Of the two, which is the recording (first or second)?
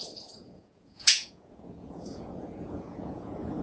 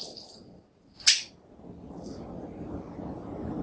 second